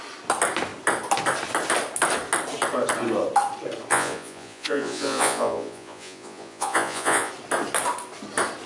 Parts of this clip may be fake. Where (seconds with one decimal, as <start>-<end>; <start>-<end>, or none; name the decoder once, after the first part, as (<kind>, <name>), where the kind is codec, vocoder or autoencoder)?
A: 3.9-7.3 (vocoder, Vocos)

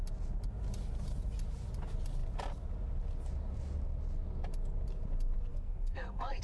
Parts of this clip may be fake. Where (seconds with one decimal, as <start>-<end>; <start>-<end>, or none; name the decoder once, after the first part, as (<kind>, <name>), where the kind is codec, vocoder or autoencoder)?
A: 5.5-6.4 (codec, SNAC)